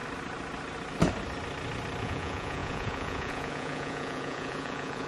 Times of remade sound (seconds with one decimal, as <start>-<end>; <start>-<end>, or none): 2.0-5.1